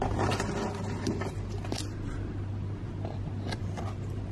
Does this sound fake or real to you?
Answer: real